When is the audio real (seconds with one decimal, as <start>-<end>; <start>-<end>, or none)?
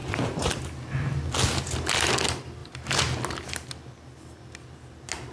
0.0-5.3